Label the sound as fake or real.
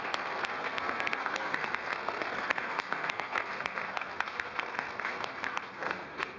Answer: fake